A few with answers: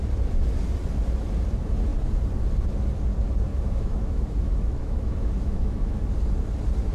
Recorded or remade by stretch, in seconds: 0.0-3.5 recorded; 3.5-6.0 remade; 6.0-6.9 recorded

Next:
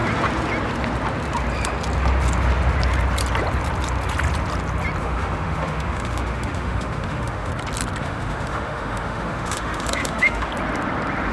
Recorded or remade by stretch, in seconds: 0.0-5.0 recorded; 5.0-7.5 remade; 7.5-8.0 recorded; 8.0-10.5 remade; 10.5-11.3 recorded

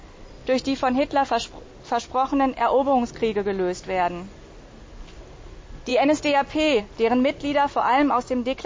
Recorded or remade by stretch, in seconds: 0.0-8.7 recorded

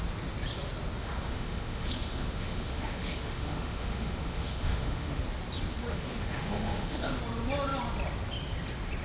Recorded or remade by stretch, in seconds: 0.0-1.0 recorded; 1.0-5.2 remade; 5.2-5.9 recorded; 5.9-7.2 remade; 7.2-9.0 recorded

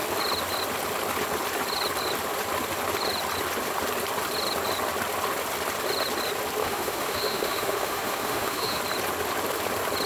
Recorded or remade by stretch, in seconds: 0.0-6.6 recorded; 6.6-8.8 remade; 8.8-10.1 recorded